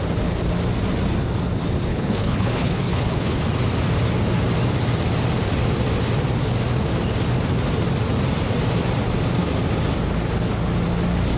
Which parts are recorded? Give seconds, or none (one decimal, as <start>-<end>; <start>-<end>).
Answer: 0.0-1.9; 3.4-11.4